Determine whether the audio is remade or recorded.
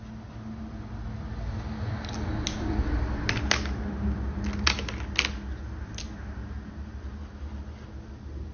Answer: recorded